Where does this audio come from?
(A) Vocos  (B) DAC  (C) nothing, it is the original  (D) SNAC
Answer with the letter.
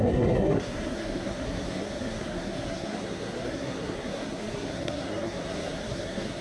D